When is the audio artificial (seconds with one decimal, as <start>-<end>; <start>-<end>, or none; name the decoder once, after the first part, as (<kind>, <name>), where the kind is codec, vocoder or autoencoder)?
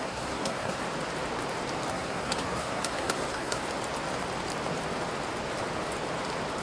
0.0-0.8 (codec, SNAC); 1.9-3.6